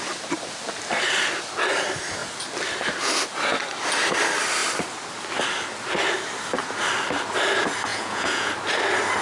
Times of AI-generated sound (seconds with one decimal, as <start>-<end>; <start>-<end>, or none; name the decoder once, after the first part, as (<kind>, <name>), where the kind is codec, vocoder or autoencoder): 7.9-8.5 (vocoder, Vocos)